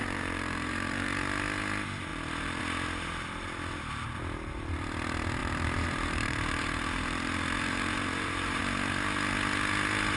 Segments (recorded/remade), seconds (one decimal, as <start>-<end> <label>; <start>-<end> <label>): 0.0-1.2 remade; 1.2-2.1 recorded; 2.1-2.6 remade; 2.6-5.4 recorded; 5.4-8.6 remade; 8.6-10.2 recorded